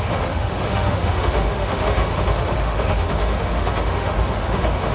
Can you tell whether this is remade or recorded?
remade